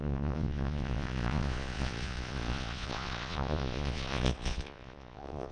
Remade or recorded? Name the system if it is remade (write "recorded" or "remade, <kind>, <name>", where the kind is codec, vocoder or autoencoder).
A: remade, vocoder, Vocos